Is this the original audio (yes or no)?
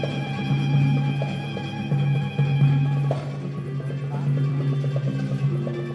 yes